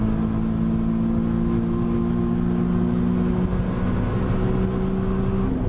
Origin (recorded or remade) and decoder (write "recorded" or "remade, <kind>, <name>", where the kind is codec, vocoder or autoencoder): recorded